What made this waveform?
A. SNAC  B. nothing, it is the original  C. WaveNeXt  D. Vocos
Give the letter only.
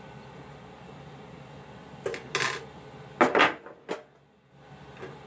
B